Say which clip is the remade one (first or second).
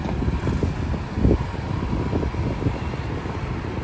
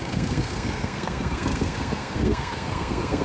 second